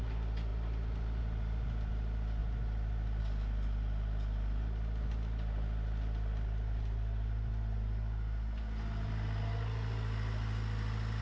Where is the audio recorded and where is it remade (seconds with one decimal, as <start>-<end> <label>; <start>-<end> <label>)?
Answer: 0.0-11.2 recorded